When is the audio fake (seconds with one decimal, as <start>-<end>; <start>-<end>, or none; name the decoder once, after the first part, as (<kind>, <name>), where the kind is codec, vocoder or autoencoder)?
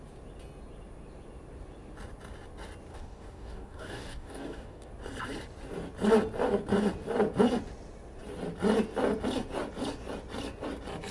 2.9-4.9 (codec, DAC)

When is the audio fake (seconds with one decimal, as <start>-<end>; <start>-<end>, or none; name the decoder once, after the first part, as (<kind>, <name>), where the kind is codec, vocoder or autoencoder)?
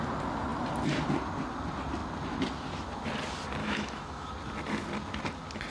3.6-4.3 (autoencoder, DAC-VAE)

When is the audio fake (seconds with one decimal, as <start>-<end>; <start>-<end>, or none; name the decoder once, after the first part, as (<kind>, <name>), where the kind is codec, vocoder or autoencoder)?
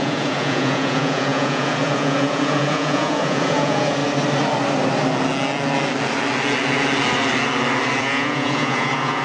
0.0-4.0 (vocoder, Vocos); 8.0-9.2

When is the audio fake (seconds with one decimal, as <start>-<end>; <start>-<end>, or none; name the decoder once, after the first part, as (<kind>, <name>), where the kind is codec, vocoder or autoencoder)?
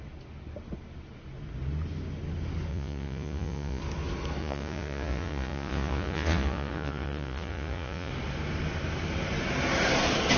2.7-3.8 (vocoder, Vocos); 4.4-8.1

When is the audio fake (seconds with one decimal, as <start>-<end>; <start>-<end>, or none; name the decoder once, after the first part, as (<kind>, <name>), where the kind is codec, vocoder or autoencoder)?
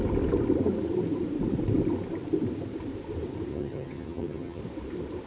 3.5-4.6 (vocoder, HiFi-GAN)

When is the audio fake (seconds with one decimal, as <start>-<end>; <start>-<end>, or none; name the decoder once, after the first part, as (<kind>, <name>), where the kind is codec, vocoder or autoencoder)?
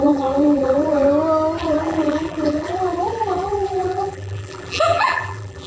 0.0-1.1 (vocoder, BigVGAN v2); 1.6-5.7